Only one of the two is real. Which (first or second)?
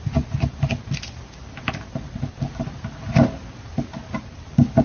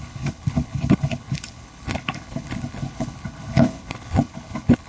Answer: first